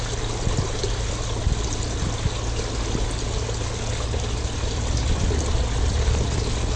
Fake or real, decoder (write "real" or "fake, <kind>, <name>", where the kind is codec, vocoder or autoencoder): real